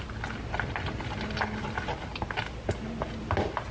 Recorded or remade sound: recorded